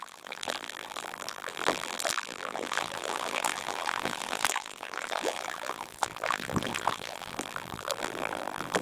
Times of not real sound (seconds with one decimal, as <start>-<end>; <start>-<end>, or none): 0.0-8.8